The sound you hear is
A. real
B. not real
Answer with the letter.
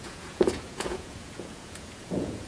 B